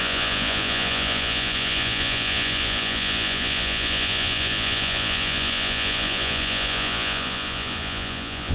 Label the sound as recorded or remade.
remade